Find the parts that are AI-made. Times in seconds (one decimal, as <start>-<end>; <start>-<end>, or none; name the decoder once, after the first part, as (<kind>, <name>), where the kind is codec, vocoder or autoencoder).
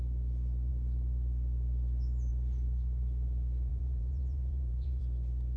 3.7-5.0 (vocoder, Vocos)